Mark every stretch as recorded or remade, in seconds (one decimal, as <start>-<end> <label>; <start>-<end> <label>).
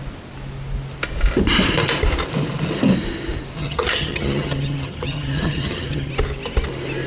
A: 0.0-3.6 recorded; 3.6-6.1 remade; 6.1-7.1 recorded